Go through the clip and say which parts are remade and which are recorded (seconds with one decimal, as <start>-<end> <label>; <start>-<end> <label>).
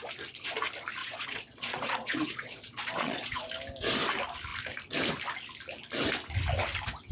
0.0-1.0 recorded; 1.0-3.5 remade; 3.5-7.1 recorded